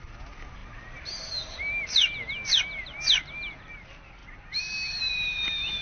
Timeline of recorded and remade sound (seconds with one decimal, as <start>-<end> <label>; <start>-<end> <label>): 0.0-5.8 recorded